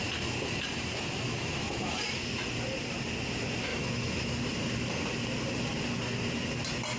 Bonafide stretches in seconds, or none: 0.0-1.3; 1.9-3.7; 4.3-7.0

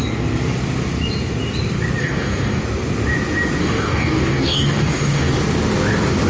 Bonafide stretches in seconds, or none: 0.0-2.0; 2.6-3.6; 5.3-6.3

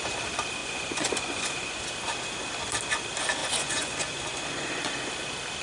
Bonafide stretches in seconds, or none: 0.0-0.6; 1.8-3.4; 5.1-5.6